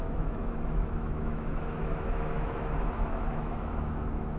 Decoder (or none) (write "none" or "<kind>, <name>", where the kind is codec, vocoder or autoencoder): autoencoder, DAC-VAE